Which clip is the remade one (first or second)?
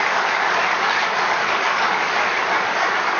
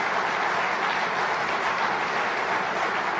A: first